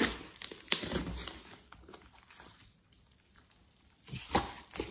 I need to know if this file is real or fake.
real